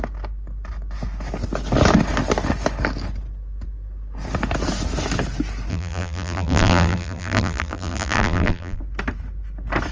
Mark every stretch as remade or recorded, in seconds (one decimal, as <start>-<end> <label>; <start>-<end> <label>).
0.0-5.7 recorded; 5.7-8.8 remade; 8.8-9.9 recorded